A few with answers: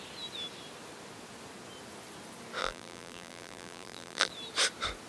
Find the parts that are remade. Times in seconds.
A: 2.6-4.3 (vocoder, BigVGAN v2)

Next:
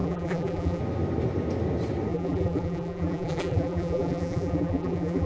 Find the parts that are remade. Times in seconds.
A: 0.0-0.8 (vocoder, BigVGAN v2); 2.1-5.3

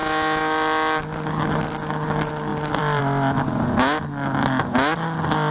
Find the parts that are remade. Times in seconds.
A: 2.5-3.0 (vocoder, BigVGAN v2)

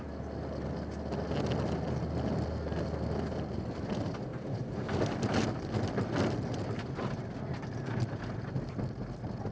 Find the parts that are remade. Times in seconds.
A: 4.3-8.3 (vocoder, BigVGAN v2)

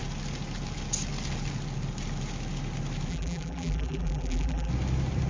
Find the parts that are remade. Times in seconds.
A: 3.1-4.7 (vocoder, BigVGAN v2)

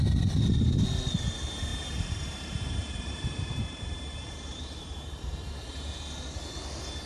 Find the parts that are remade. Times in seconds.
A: 1.7-5.9 (vocoder, BigVGAN v2)